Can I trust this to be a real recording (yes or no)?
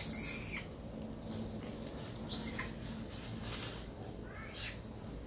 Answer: yes